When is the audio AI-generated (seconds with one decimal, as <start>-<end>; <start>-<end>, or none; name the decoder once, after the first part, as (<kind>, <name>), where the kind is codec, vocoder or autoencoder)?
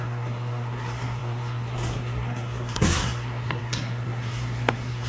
0.0-5.1 (codec, SNAC)